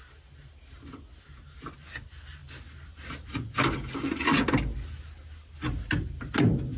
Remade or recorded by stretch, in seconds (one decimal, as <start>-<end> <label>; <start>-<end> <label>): 0.0-6.8 recorded